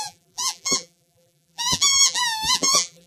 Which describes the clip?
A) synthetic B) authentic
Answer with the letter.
A